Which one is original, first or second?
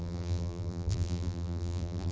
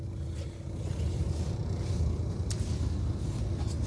second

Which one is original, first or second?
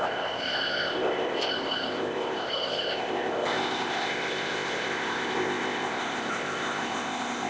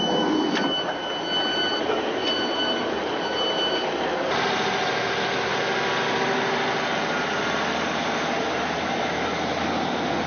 second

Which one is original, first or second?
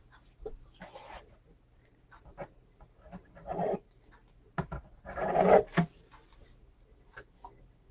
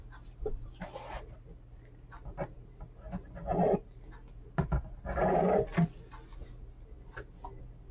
second